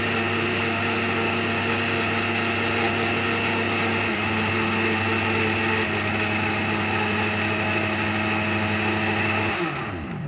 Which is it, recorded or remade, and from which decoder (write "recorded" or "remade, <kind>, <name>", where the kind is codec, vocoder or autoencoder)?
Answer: recorded